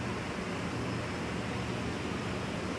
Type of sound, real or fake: real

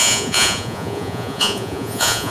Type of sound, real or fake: fake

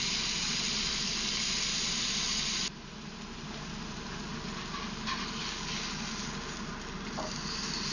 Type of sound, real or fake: real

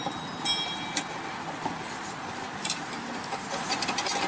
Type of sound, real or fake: real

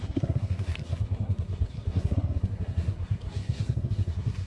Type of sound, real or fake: fake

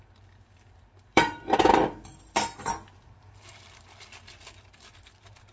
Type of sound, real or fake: fake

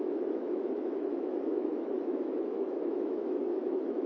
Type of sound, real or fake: fake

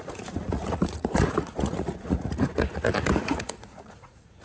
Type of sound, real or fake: fake